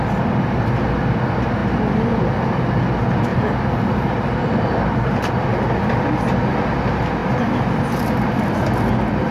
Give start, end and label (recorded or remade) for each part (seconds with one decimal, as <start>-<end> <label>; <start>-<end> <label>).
0.0-7.2 recorded; 7.2-7.7 remade; 7.7-9.3 recorded